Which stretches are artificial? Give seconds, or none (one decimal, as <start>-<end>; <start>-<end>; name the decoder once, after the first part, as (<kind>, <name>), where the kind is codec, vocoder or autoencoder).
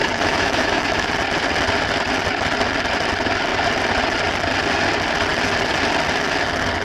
0.0-1.1 (autoencoder, DAC-VAE)